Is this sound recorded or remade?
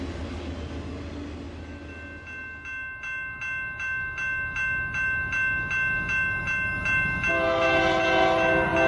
recorded